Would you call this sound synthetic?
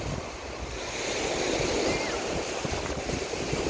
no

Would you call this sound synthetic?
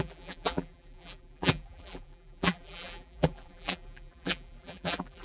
yes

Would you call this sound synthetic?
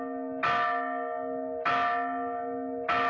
no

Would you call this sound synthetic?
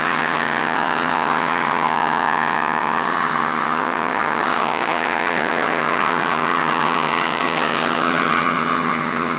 yes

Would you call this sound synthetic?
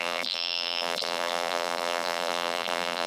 yes